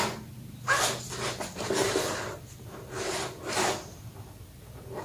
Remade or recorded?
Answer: recorded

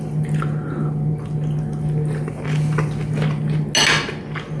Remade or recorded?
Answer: recorded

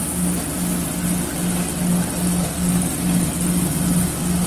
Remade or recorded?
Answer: recorded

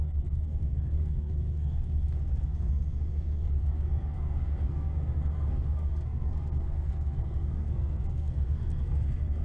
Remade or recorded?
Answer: remade